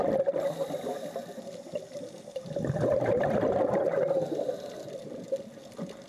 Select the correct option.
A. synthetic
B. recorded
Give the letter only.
B